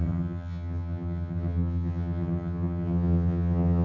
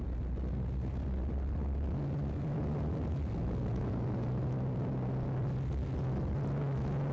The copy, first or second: first